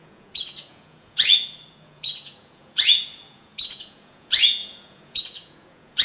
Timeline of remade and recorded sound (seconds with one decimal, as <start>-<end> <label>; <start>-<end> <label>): 0.0-6.0 remade